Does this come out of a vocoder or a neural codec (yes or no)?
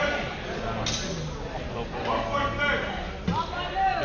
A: no